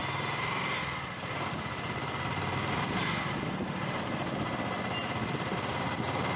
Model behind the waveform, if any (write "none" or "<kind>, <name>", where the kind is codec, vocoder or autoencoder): none